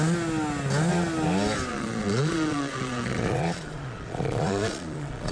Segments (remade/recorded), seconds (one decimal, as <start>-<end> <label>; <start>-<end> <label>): 0.0-1.7 recorded; 1.7-5.3 remade